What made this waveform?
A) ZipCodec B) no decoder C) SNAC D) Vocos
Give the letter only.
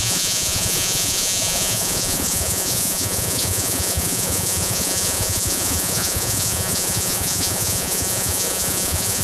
D